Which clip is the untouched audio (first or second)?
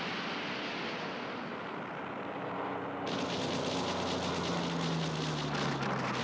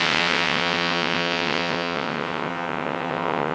first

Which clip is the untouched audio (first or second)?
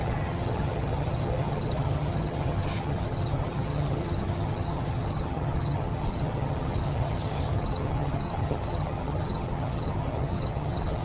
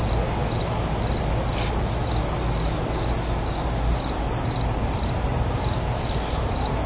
second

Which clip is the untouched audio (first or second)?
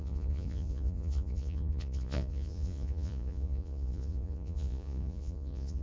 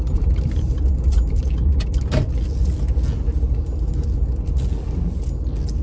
second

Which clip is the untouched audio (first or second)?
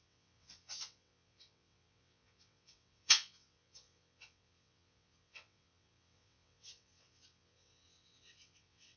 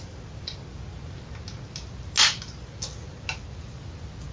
second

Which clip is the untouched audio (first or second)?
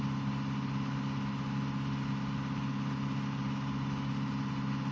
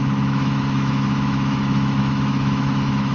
first